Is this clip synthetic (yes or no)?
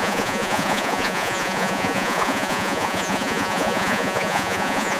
yes